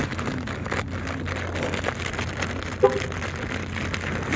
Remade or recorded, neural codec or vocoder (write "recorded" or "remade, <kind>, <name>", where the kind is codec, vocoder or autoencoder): recorded